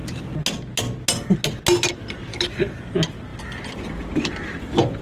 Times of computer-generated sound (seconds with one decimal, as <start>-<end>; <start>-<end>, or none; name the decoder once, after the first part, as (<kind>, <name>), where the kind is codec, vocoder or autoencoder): 2.3-2.8 (codec, DAC)